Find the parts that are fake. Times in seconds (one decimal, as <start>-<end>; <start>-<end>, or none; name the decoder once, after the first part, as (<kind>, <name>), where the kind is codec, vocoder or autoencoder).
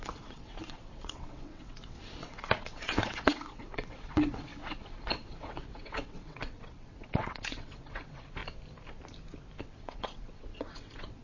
0.0-8.4 (vocoder, WaveNeXt); 9.6-11.2